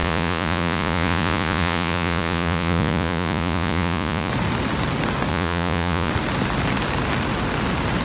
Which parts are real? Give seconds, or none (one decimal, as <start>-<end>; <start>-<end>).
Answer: 4.3-5.3; 6.1-8.0